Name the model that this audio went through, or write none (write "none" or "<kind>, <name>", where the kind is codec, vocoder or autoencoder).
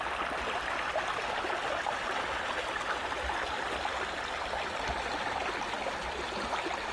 none